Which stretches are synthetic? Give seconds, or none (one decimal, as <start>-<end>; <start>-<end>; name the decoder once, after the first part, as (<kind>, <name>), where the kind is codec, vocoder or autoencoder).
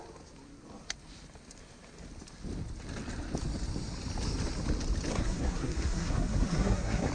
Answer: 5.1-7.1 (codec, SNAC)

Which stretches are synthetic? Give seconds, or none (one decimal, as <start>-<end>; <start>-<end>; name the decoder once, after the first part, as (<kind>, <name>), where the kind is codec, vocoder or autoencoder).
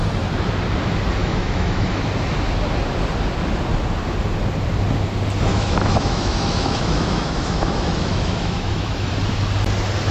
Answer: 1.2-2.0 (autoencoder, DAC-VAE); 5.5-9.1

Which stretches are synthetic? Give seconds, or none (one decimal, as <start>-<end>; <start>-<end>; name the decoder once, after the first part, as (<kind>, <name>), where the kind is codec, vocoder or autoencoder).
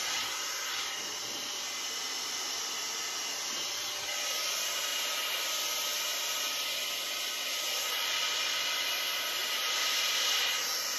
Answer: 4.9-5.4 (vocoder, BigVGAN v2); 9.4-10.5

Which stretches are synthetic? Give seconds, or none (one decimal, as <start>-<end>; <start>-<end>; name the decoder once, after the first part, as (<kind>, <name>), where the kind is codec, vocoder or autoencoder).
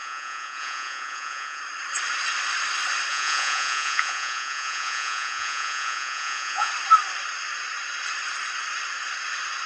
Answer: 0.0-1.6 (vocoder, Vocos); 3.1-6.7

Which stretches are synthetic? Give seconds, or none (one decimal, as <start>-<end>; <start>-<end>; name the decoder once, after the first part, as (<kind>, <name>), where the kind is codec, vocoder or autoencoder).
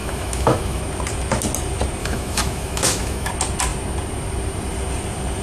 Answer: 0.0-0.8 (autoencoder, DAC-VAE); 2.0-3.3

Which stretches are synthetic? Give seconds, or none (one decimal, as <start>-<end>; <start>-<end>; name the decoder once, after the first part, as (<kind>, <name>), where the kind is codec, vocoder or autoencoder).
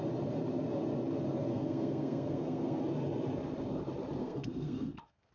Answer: 1.5-2.8 (codec, SNAC); 4.2-5.3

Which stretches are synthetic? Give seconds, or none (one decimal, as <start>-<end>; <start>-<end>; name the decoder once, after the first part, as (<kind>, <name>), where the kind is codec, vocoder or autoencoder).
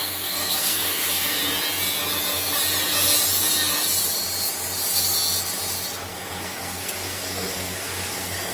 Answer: 0.0-1.4 (codec, SNAC); 6.1-8.5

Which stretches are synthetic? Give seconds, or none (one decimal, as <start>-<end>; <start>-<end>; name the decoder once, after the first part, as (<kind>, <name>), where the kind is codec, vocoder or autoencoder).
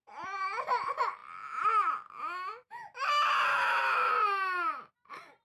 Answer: 3.5-4.1 (autoencoder, DAC-VAE)